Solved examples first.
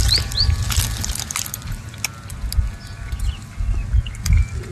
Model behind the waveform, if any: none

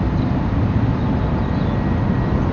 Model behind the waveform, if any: none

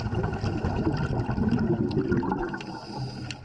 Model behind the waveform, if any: none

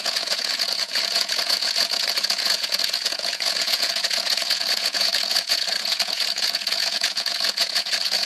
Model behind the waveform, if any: vocoder, Vocos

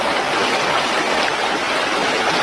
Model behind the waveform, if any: none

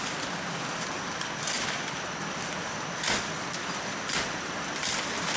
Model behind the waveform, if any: none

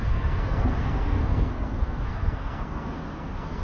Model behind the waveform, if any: codec, SNAC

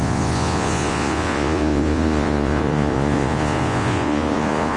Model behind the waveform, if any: vocoder, Vocos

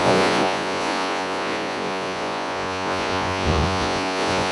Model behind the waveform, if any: vocoder, Vocos